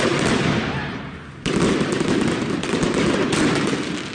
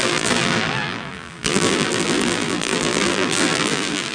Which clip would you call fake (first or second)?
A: second